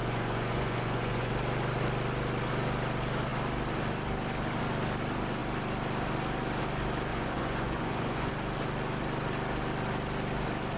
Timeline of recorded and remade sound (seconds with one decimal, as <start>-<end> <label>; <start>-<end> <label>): 0.0-1.3 remade; 1.3-7.1 recorded; 7.1-8.3 remade; 8.3-10.8 recorded